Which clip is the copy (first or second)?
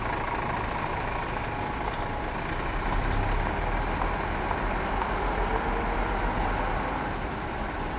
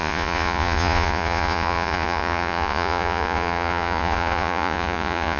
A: second